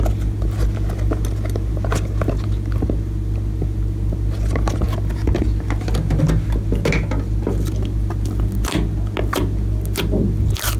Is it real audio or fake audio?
real